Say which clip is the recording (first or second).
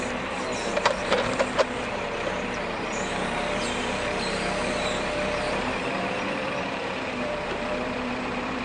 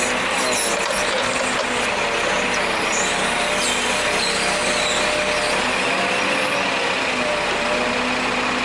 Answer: second